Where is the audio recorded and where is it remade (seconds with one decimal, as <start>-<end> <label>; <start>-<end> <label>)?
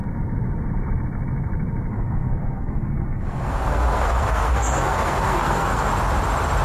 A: 0.0-1.9 recorded; 1.9-5.9 remade; 5.9-6.6 recorded